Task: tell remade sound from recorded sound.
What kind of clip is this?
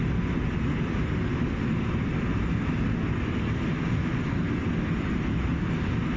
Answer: recorded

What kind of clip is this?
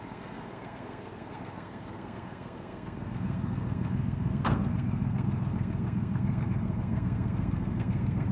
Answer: remade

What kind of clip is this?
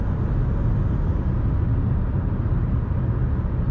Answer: recorded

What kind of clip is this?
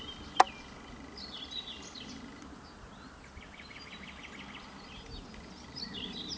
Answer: recorded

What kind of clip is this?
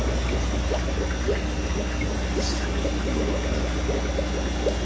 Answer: recorded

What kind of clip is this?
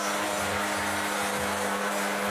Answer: recorded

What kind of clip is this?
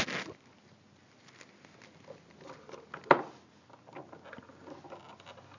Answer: recorded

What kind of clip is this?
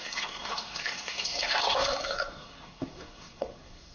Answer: remade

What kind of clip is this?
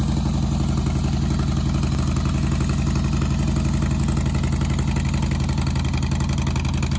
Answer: recorded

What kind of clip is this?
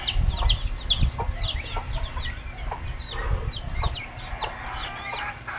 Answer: recorded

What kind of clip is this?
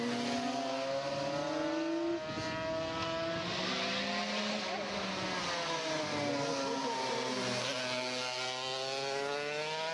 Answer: recorded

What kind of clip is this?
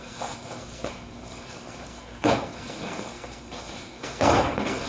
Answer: remade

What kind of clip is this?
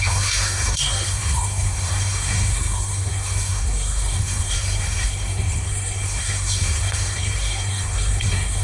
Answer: remade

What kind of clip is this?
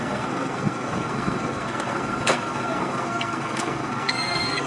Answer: remade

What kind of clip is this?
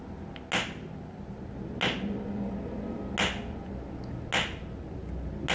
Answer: recorded